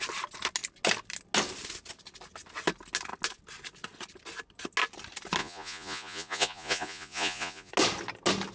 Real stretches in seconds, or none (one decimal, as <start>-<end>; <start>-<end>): 0.0-5.4; 7.7-8.5